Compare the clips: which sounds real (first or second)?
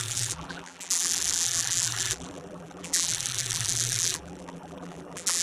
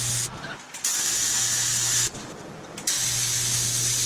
second